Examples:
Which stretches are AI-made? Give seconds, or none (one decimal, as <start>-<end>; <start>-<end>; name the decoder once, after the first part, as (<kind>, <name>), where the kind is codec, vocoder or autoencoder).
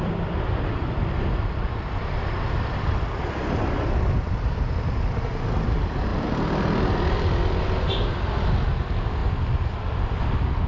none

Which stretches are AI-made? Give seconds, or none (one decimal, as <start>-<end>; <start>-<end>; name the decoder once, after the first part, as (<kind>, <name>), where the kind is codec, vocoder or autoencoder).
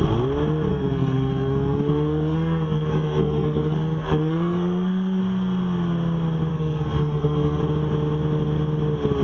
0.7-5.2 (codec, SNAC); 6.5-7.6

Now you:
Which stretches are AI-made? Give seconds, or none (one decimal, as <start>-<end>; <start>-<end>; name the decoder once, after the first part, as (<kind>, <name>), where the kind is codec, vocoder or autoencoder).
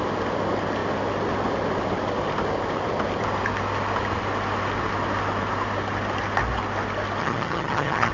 7.2-8.1 (vocoder, HiFi-GAN)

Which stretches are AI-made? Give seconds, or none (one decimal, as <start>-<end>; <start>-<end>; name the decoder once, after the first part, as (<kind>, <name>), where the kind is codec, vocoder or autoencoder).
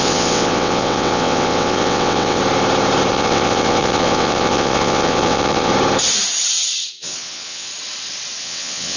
0.0-2.4 (vocoder, WaveNeXt); 3.1-5.7; 6.9-7.7; 8.4-9.0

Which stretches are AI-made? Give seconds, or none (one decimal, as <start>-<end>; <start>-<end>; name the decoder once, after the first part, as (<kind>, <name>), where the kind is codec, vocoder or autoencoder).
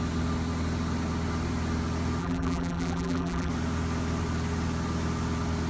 2.2-3.5 (vocoder, BigVGAN v2)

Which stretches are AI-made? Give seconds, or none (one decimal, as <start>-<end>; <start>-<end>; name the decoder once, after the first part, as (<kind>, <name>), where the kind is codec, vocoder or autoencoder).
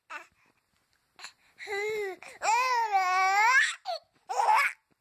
none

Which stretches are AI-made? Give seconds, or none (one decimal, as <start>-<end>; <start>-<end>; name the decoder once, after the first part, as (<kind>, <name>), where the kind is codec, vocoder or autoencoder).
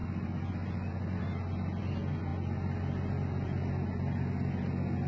none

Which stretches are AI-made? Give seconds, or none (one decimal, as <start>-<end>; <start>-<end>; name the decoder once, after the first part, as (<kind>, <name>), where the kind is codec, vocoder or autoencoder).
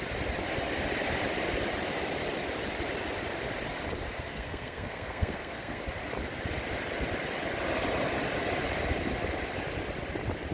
4.3-5.8 (codec, SNAC)